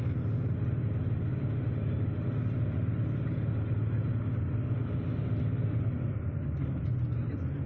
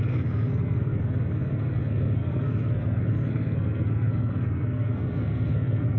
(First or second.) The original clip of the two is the first